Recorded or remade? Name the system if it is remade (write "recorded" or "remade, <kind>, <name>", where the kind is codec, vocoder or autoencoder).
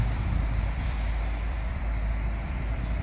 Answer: remade, vocoder, BigVGAN v2